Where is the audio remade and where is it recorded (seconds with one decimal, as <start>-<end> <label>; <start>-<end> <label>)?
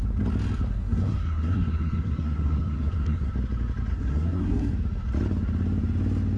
0.0-0.7 recorded; 0.7-3.3 remade; 3.3-3.9 recorded; 3.9-4.7 remade; 4.7-6.4 recorded